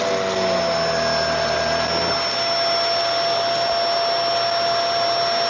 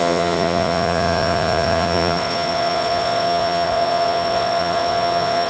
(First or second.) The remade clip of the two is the second